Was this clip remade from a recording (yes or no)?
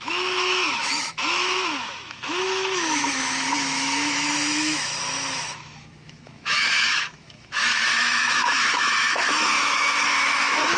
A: yes